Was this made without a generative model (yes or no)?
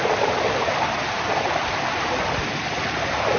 yes